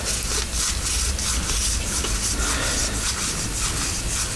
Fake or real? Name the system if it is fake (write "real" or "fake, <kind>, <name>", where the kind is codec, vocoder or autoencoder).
real